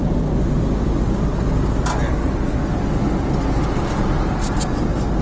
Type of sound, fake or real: real